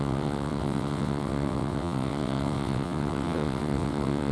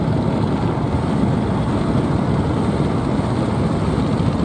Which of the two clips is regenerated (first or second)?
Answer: first